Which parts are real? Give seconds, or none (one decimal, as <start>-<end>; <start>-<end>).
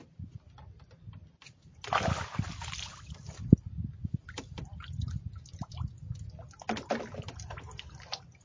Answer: 0.0-8.4